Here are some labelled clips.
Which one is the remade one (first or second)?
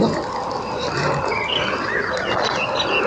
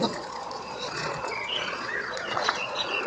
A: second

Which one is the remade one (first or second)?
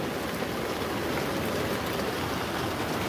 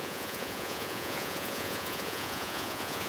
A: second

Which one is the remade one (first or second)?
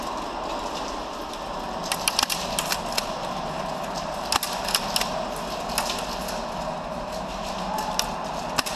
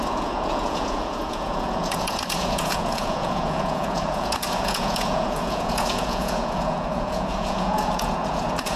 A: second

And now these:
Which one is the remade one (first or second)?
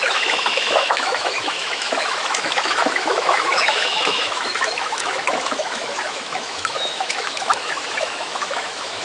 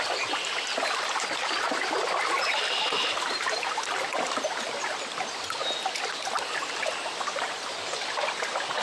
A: first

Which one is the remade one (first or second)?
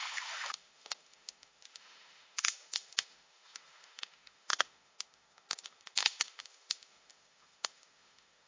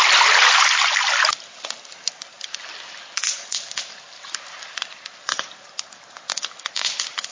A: first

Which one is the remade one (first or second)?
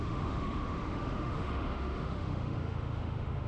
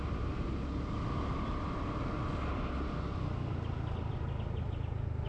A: first